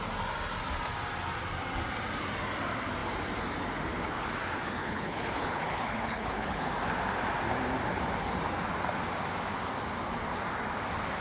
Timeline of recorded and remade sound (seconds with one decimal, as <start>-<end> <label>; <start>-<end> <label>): 0.0-4.8 recorded; 4.8-6.7 remade; 6.7-11.2 recorded